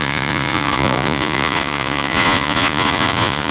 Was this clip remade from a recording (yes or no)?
yes